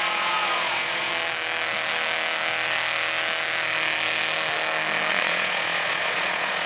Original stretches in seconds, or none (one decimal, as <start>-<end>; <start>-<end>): 1.1-5.1